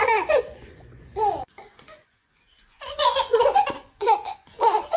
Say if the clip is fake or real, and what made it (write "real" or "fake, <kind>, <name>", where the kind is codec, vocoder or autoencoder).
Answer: fake, vocoder, Vocos